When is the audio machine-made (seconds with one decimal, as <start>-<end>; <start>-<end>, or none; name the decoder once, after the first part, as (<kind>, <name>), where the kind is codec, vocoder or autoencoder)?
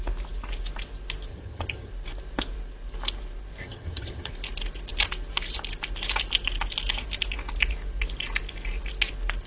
1.3-1.9 (vocoder, HiFi-GAN); 3.6-4.3